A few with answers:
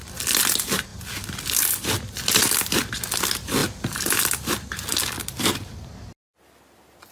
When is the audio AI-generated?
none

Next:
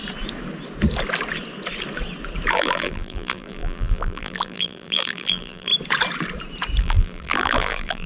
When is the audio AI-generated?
2.5-5.7 (vocoder, BigVGAN v2); 6.8-8.1

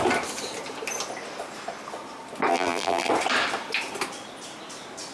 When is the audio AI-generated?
2.5-3.1 (vocoder, BigVGAN v2)

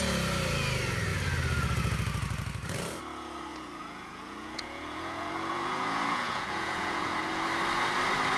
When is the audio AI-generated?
3.5-7.2 (vocoder, Vocos)

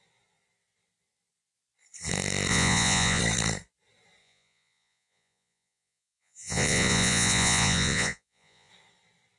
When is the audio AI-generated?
2.5-3.2 (vocoder, Vocos); 4.2-8.7

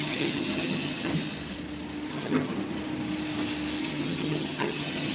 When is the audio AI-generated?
0.0-1.1 (vocoder, HiFi-GAN); 2.1-2.5; 3.8-5.1

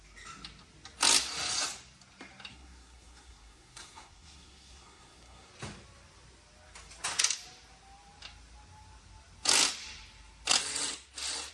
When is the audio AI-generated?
2.5-5.5 (codec, SNAC)

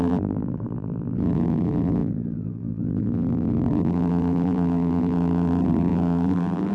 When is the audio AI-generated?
0.0-6.7 (vocoder, BigVGAN v2)